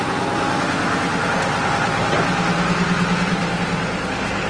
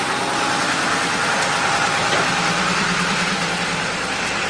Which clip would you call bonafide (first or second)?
first